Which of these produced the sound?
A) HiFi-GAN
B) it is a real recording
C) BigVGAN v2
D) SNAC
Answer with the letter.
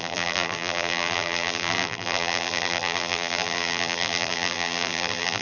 C